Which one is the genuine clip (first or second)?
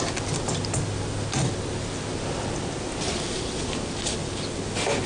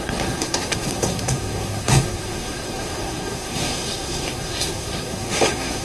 first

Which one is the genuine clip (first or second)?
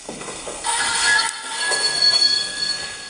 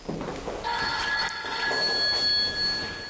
second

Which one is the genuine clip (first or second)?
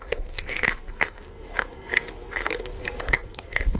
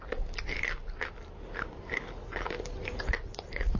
second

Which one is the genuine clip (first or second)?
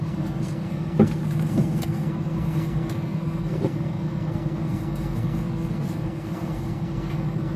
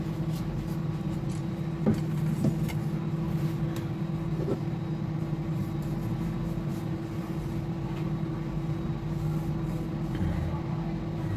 second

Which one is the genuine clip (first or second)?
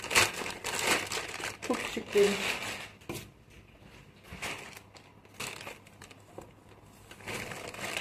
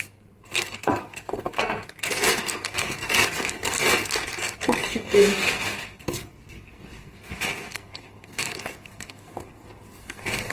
first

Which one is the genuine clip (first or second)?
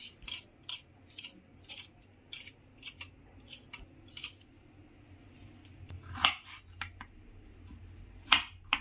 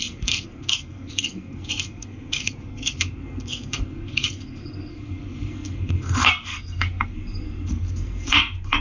first